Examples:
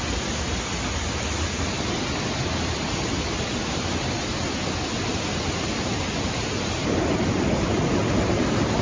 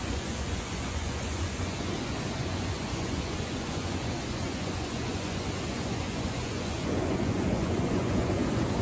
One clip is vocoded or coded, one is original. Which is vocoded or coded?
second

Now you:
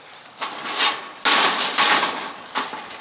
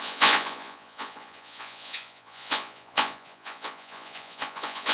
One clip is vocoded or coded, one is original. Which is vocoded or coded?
second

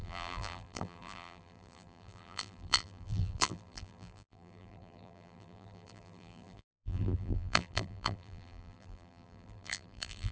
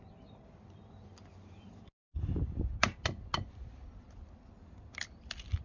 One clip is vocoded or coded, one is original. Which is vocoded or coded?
first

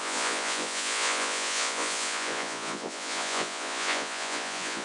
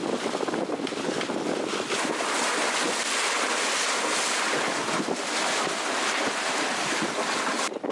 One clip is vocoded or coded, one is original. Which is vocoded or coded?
first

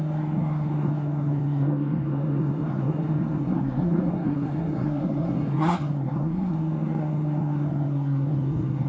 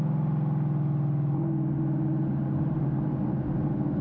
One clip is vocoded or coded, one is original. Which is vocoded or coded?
first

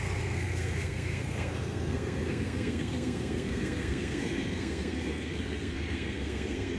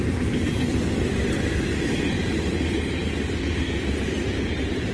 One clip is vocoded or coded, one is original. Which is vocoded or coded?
first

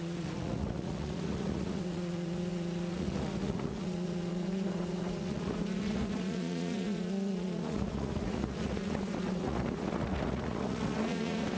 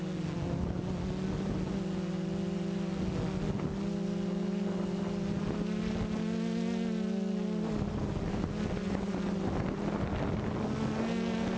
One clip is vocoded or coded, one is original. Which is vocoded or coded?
first